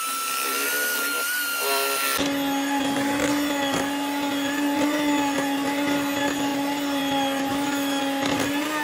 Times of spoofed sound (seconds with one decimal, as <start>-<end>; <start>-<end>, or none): 7.5-8.0